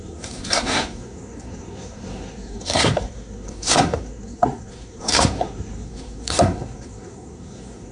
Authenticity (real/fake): fake